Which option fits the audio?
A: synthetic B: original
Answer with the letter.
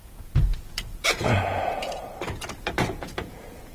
A